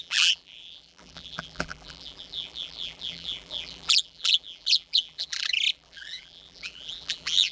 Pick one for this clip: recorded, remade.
remade